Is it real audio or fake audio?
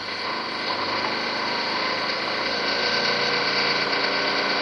real